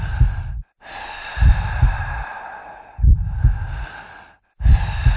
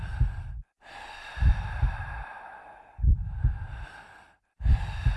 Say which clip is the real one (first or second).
first